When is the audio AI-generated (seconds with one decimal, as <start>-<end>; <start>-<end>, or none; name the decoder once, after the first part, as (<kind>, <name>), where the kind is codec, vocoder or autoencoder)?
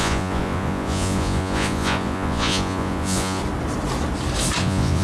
0.0-3.4 (vocoder, Vocos); 4.6-5.0